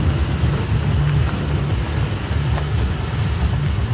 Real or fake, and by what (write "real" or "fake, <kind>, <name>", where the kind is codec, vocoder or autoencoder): real